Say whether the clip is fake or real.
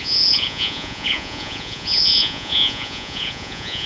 fake